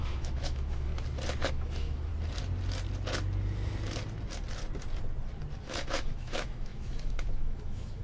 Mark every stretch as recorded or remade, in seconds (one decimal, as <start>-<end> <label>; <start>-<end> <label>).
0.0-0.9 remade; 0.9-1.5 recorded; 1.5-2.1 remade; 2.1-5.6 recorded; 5.6-8.0 remade